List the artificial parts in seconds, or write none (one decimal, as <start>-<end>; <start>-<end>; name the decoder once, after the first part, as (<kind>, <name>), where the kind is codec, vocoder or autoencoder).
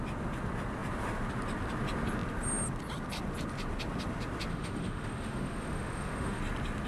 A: 4.5-6.4 (autoencoder, DAC-VAE)